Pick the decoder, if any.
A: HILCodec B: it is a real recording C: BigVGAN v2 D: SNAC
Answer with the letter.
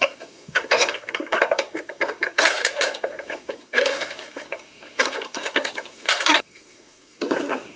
D